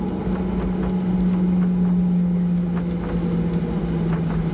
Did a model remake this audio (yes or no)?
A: no